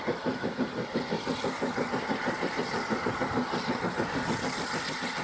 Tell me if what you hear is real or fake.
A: real